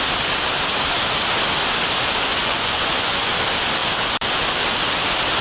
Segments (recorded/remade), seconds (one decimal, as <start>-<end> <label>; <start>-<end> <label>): 0.0-2.4 recorded; 2.4-3.3 remade; 3.3-5.4 recorded